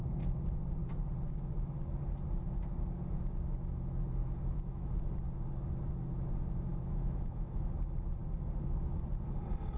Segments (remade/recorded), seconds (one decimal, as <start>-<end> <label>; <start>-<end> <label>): 0.0-4.2 recorded; 4.2-4.9 remade; 4.9-6.7 recorded; 6.7-7.7 remade; 7.7-9.8 recorded